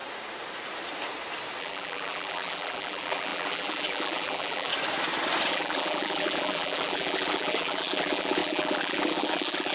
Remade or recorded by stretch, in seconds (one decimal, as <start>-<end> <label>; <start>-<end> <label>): 0.0-1.6 recorded; 1.6-4.7 remade; 4.7-5.5 recorded; 5.5-9.7 remade